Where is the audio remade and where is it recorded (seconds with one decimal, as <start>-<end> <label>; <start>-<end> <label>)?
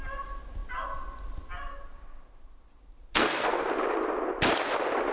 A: 0.0-3.1 recorded; 3.1-3.7 remade; 3.7-5.1 recorded